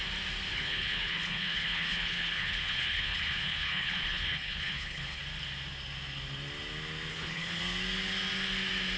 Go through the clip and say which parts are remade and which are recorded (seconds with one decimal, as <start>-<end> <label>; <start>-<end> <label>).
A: 0.0-0.5 recorded; 0.5-5.2 remade; 5.2-7.1 recorded; 7.1-7.6 remade; 7.6-9.0 recorded